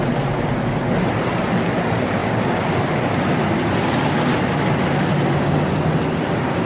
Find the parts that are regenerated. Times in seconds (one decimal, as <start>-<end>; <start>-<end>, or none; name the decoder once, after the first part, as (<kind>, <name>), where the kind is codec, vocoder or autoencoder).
none